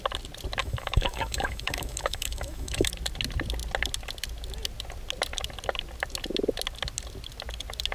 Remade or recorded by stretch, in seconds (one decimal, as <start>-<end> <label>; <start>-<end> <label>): 0.0-0.6 recorded; 0.6-2.9 remade; 2.9-7.9 recorded